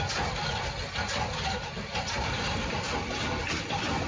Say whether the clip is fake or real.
real